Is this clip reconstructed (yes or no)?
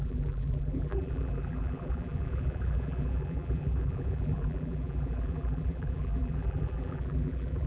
yes